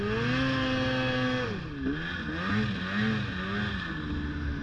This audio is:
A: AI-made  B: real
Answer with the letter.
B